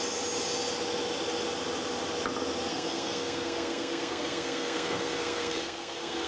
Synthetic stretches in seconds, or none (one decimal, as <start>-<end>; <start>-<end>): 2.7-6.3